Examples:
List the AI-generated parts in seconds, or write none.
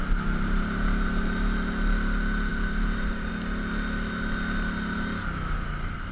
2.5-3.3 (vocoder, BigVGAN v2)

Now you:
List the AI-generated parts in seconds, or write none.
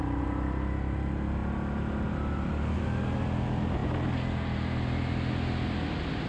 none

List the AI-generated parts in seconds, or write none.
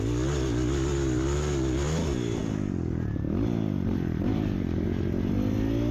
none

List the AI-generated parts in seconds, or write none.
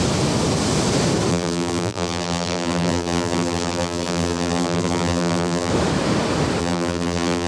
1.3-5.7 (vocoder, BigVGAN v2); 6.6-7.5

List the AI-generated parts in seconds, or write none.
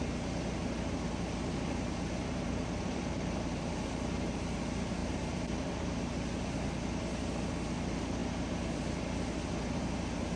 1.3-4.5 (vocoder, BigVGAN v2); 5.0-5.8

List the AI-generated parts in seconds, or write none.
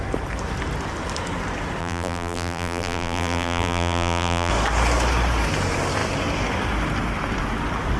1.8-4.5 (vocoder, BigVGAN v2)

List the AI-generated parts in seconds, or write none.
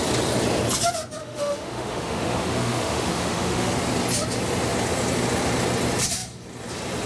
1.2-3.7 (autoencoder, DAC-VAE)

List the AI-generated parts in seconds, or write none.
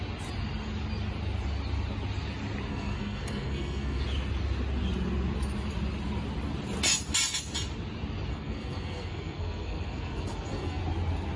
2.7-4.0 (codec, SNAC); 8.3-10.8